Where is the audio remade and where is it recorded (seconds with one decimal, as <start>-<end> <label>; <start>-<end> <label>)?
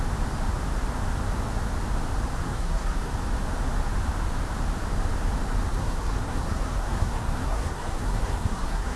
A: 0.0-2.4 recorded; 2.4-3.1 remade; 3.1-5.7 recorded; 5.7-9.0 remade